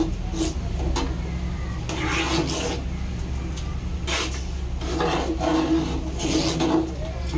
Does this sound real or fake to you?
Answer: real